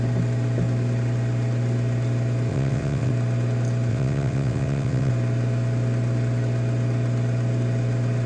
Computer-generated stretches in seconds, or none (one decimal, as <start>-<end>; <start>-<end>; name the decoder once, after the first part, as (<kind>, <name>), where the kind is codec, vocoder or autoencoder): 2.5-3.1 (vocoder, WaveNeXt); 3.9-5.1